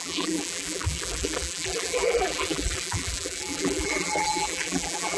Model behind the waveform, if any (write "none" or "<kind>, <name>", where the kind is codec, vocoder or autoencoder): vocoder, BigVGAN v2